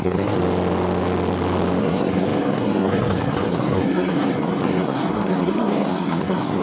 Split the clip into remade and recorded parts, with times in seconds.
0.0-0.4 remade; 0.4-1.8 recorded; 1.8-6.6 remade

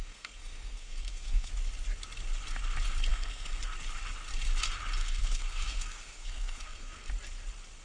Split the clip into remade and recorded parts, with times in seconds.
0.0-1.5 remade; 1.5-3.1 recorded; 3.1-3.6 remade; 3.6-5.0 recorded; 5.0-7.1 remade; 7.1-7.8 recorded

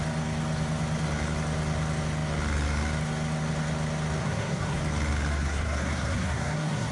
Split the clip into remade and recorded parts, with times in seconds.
0.0-4.2 recorded; 4.2-4.8 remade; 4.8-5.3 recorded; 5.3-6.9 remade

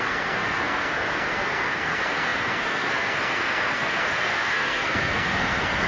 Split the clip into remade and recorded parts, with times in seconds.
0.0-5.9 remade

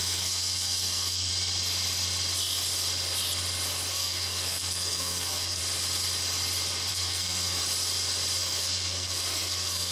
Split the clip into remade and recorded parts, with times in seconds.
0.0-1.3 remade; 1.3-3.9 recorded; 3.9-5.6 remade; 5.6-6.9 recorded; 6.9-7.6 remade; 7.6-8.4 recorded; 8.4-9.9 remade

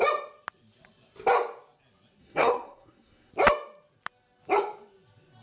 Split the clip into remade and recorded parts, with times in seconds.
0.0-2.2 recorded; 2.2-3.3 remade; 3.3-5.4 recorded

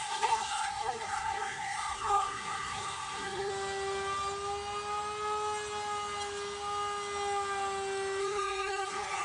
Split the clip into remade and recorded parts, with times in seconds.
0.0-3.5 remade; 3.5-8.2 recorded; 8.2-9.2 remade

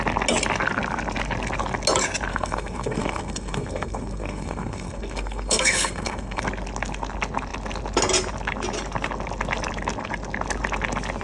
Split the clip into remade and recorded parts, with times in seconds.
0.0-2.3 recorded; 2.3-6.4 remade; 6.4-11.2 recorded